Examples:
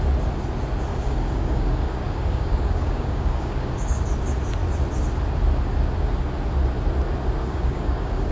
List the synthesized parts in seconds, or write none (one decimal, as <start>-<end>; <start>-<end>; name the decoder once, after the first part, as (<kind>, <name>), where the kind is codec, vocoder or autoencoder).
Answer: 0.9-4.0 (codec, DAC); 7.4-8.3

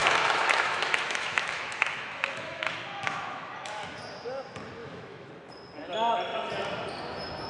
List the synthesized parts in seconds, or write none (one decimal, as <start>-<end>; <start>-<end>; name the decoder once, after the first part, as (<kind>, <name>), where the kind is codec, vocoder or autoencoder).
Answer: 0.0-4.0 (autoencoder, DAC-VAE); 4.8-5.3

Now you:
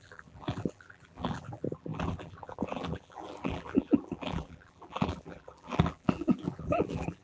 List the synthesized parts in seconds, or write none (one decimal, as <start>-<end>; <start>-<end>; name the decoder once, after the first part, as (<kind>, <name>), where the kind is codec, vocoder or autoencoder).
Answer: 0.0-7.2 (vocoder, BigVGAN v2)